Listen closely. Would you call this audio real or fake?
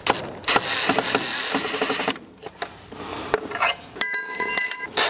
real